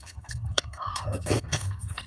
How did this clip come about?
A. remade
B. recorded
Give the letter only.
A